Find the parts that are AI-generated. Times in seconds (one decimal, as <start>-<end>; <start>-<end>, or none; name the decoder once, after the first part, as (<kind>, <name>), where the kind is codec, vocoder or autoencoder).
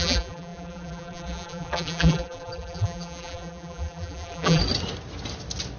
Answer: 0.0-4.6 (vocoder, BigVGAN v2)